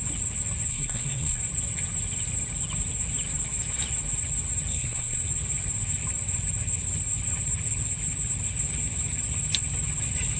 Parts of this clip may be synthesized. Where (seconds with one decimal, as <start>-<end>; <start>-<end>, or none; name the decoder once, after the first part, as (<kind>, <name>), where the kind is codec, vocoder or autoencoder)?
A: 0.7-1.4 (codec, SNAC); 4.7-5.3

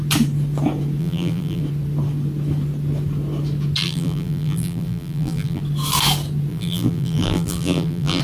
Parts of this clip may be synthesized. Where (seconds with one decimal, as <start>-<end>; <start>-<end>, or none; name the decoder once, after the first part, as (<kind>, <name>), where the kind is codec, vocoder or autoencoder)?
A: 1.0-1.6 (vocoder, BigVGAN v2); 3.8-5.6; 6.5-8.2

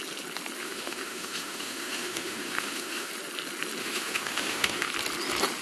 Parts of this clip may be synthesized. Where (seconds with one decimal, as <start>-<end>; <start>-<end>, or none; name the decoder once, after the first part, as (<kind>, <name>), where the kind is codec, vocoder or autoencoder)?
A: 0.6-3.1 (autoencoder, DAC-VAE); 3.8-4.9